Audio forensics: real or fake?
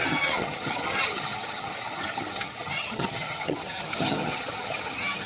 fake